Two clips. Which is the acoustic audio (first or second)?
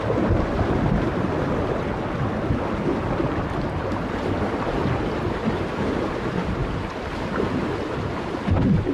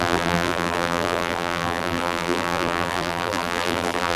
first